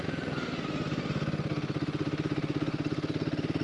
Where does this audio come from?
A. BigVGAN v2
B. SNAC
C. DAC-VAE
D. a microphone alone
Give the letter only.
D